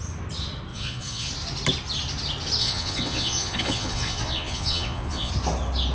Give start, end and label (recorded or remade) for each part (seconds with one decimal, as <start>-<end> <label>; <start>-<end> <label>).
0.0-0.7 recorded; 0.7-1.3 remade; 1.3-2.6 recorded; 2.6-5.3 remade; 5.3-5.9 recorded